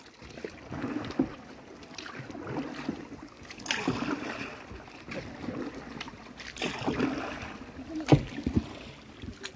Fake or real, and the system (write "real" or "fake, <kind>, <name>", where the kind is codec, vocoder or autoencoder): real